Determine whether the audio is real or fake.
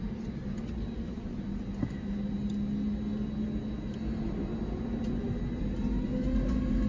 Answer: real